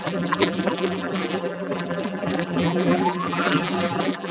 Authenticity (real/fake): fake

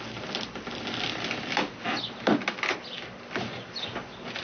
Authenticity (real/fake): real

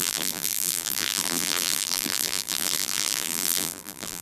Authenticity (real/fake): fake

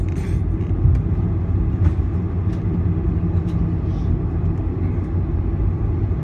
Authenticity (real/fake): real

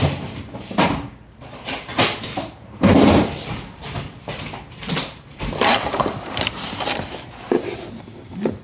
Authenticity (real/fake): fake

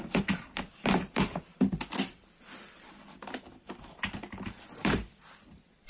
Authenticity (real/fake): fake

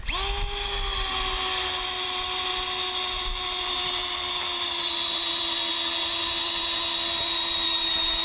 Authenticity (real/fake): real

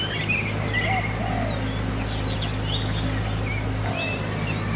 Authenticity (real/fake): real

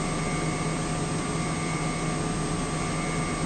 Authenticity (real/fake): real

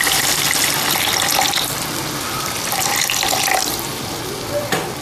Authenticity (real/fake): real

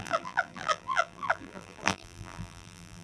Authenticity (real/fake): fake